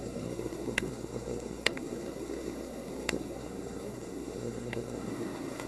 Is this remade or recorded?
remade